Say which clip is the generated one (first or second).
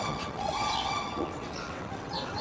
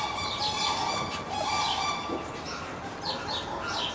first